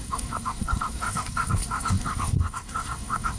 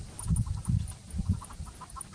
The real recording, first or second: second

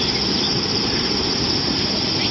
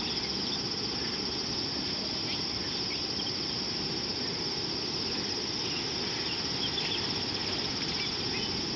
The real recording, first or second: second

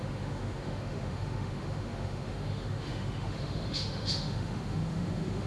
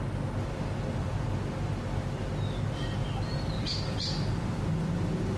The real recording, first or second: second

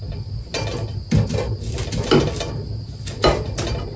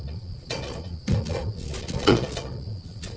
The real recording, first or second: first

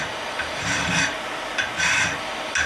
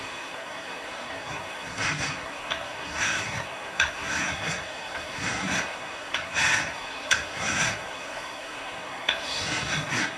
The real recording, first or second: first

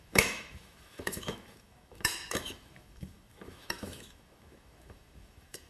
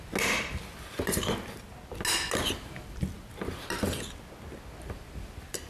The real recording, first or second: second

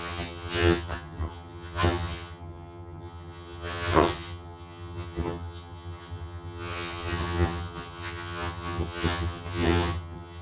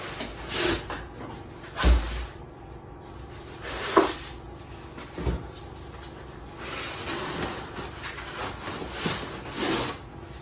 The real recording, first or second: second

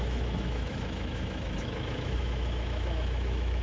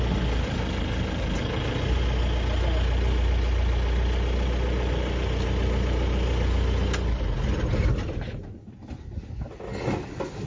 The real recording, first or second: second